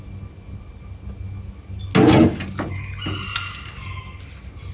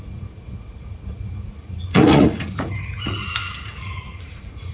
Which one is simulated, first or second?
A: second